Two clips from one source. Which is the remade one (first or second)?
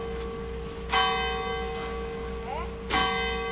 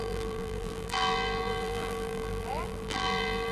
second